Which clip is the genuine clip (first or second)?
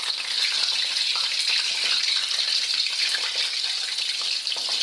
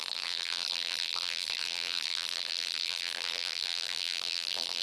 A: first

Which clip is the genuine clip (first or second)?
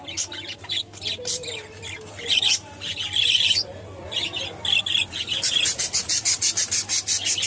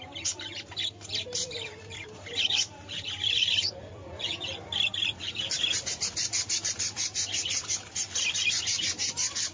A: first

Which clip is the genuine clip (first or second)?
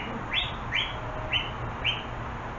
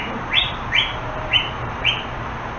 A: first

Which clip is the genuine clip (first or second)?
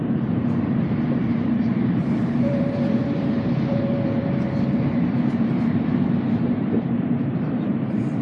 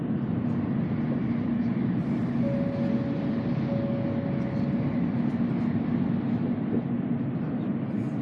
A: second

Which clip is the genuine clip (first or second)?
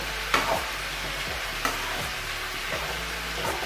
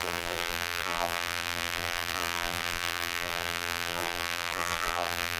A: first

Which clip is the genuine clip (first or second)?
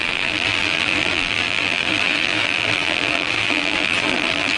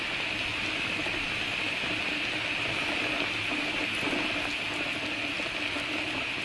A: second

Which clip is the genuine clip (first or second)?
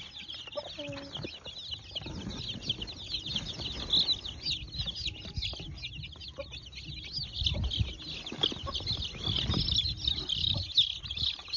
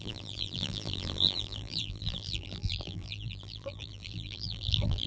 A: first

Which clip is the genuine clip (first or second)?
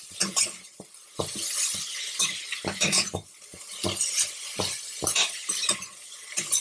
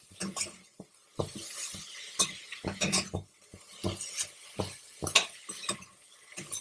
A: second